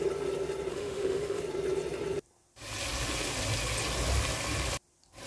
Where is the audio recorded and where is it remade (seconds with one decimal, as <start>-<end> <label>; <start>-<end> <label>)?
0.0-0.7 recorded; 0.7-1.4 remade; 1.4-5.3 recorded

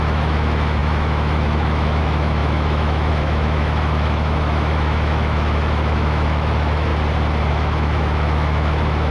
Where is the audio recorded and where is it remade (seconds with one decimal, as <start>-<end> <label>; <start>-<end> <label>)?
0.0-6.9 remade; 6.9-7.5 recorded; 7.5-9.1 remade

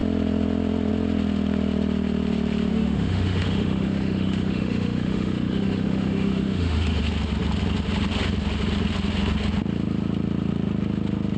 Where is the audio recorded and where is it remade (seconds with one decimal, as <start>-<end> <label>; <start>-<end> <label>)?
0.0-2.7 recorded; 2.7-7.0 remade; 7.0-11.4 recorded

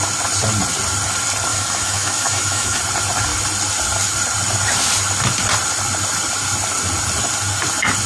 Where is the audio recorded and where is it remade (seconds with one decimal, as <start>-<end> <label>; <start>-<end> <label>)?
0.0-1.5 recorded; 1.5-2.8 remade; 2.8-8.1 recorded

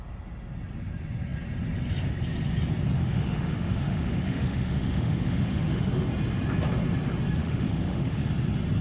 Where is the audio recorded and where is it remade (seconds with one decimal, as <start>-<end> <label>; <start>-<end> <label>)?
0.0-3.0 recorded; 3.0-5.8 remade; 5.8-7.4 recorded; 7.4-8.3 remade; 8.3-8.8 recorded

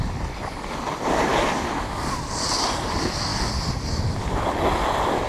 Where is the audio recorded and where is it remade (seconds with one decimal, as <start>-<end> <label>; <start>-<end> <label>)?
0.0-5.3 recorded